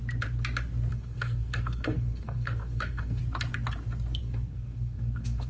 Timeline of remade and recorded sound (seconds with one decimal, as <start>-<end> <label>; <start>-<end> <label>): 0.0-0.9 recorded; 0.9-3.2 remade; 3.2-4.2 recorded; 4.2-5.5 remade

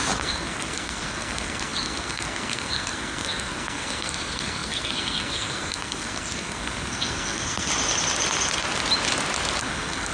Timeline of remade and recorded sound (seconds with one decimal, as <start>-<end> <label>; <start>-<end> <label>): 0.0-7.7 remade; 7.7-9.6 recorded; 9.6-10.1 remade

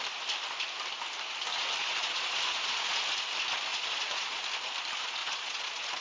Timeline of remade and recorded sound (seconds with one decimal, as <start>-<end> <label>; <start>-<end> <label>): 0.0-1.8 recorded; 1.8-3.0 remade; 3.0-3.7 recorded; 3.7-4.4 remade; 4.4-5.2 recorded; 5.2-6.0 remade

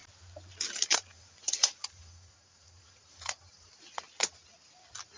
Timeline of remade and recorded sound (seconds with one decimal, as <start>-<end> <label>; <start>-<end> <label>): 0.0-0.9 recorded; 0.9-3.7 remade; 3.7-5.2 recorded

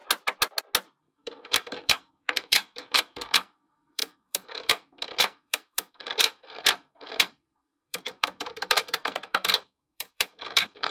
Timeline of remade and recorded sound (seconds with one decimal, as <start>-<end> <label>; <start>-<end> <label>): 0.0-1.0 recorded; 1.0-10.9 remade

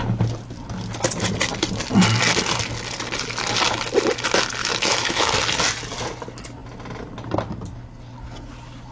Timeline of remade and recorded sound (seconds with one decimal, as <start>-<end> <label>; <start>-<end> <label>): 0.0-4.6 recorded; 4.6-5.3 remade; 5.3-8.9 recorded

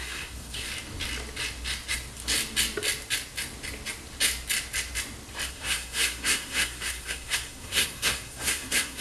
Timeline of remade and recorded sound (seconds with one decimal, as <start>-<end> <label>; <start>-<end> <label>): 0.0-0.7 remade; 0.7-5.5 recorded; 5.5-9.0 remade

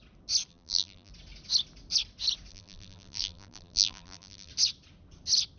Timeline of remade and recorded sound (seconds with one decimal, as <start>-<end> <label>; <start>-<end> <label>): 0.0-0.5 recorded; 0.5-1.1 remade; 1.1-2.5 recorded; 2.5-4.5 remade; 4.5-5.6 recorded